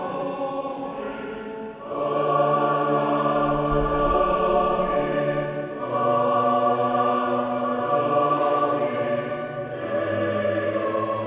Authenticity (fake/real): real